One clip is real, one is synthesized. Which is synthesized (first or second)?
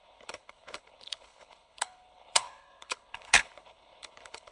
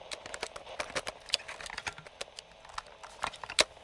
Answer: first